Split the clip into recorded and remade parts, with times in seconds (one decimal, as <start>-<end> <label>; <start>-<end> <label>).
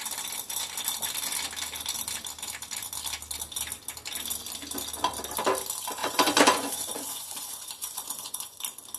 0.0-6.0 recorded; 6.0-8.6 remade; 8.6-9.0 recorded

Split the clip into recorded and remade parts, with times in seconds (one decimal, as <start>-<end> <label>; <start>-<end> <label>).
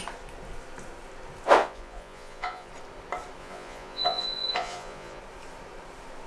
0.0-1.6 recorded; 1.6-2.7 remade; 2.7-3.4 recorded; 3.4-5.2 remade; 5.2-6.3 recorded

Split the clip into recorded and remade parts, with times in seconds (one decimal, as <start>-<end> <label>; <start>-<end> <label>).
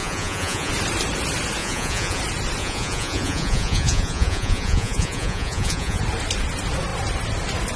0.0-0.7 remade; 0.7-1.6 recorded; 1.6-2.2 remade; 2.2-2.6 recorded; 2.6-6.0 remade; 6.0-7.8 recorded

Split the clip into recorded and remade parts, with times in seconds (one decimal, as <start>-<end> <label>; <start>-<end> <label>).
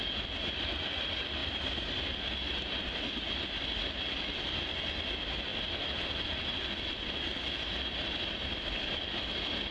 0.0-9.7 recorded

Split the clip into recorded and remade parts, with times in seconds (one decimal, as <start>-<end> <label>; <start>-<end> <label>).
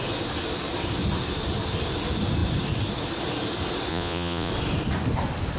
0.0-3.9 recorded; 3.9-4.5 remade; 4.5-5.6 recorded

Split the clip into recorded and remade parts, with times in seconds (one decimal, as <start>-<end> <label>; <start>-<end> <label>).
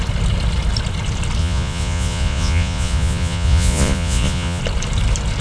0.0-1.4 recorded; 1.4-4.6 remade; 4.6-5.4 recorded